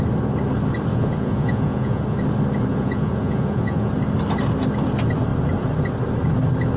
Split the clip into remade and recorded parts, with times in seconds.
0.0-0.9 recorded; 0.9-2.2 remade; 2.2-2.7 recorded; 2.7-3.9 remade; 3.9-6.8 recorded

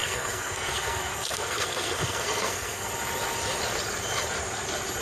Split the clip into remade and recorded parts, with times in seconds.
0.0-2.9 remade; 2.9-5.0 recorded

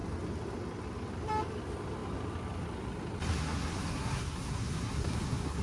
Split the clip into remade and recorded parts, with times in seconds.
0.0-3.3 recorded; 3.3-5.6 remade

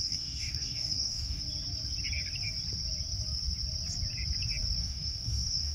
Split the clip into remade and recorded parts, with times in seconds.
0.0-1.4 remade; 1.4-4.8 recorded; 4.8-5.7 remade

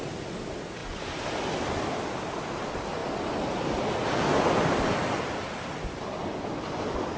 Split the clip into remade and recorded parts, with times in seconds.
0.0-7.2 recorded

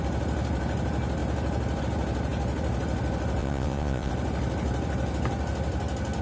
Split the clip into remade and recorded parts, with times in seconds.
0.0-3.4 recorded; 3.4-4.1 remade; 4.1-6.2 recorded

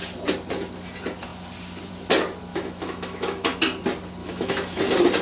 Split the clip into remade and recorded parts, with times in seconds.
0.0-2.5 recorded; 2.5-3.6 remade; 3.6-4.2 recorded; 4.2-4.8 remade; 4.8-5.2 recorded